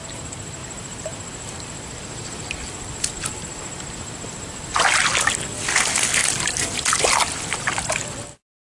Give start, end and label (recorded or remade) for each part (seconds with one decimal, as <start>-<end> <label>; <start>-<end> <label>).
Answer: 0.0-8.7 recorded